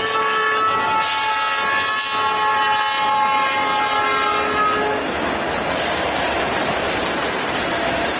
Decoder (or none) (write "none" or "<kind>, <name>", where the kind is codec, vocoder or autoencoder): none